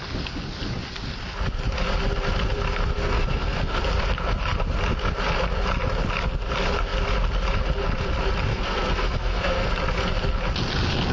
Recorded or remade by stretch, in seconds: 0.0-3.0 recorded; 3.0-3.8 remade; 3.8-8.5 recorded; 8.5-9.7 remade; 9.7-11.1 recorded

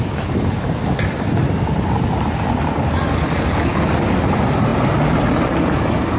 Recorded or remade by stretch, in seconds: 0.0-6.2 recorded

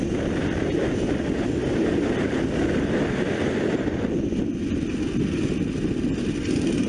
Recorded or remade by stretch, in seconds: 0.0-6.9 recorded